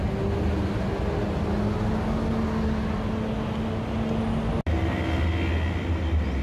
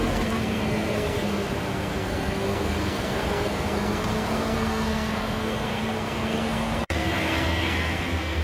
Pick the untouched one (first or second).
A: first